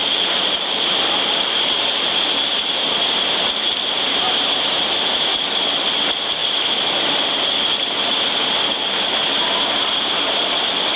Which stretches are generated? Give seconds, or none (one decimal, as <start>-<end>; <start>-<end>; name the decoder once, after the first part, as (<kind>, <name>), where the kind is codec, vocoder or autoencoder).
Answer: 0.0-2.7 (vocoder, BigVGAN v2)